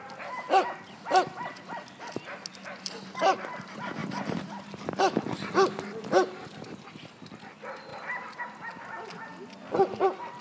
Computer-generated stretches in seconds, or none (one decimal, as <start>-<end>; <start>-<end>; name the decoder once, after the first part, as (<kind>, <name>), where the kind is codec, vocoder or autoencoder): 2.5-3.2 (vocoder, BigVGAN v2); 4.0-5.0; 7.9-8.4